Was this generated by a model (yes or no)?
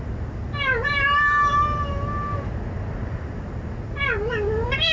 no